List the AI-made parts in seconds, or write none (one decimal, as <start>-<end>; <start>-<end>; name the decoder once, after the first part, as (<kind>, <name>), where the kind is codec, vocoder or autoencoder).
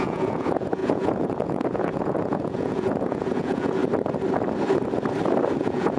0.0-3.8 (vocoder, Vocos); 5.6-6.0